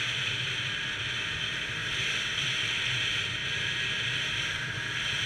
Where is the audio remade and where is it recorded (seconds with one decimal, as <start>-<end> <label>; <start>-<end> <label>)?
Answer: 0.0-3.4 recorded; 3.4-5.3 remade